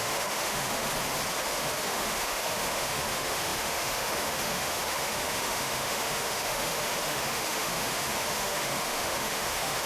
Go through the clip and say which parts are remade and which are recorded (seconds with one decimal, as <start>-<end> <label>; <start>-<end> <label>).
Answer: 0.0-0.9 remade; 0.9-1.4 recorded; 1.4-9.9 remade